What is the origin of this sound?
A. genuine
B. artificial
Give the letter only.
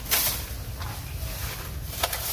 A